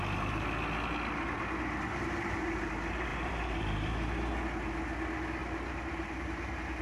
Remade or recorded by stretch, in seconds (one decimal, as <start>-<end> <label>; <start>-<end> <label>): 0.0-3.1 recorded; 3.1-3.9 remade; 3.9-5.4 recorded; 5.4-6.8 remade